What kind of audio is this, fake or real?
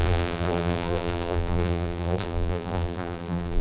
fake